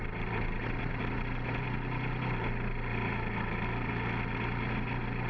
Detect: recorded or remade recorded